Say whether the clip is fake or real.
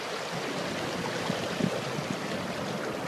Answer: real